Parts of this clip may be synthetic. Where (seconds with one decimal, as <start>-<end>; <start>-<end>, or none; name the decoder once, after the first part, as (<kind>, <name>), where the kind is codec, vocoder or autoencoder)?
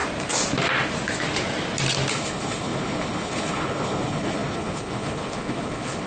2.1-6.1 (codec, HILCodec)